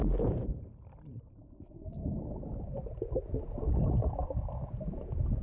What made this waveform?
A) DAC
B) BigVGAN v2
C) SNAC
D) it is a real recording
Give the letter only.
D